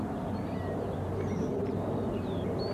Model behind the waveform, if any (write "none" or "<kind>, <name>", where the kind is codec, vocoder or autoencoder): vocoder, BigVGAN v2